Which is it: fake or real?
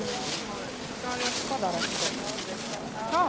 real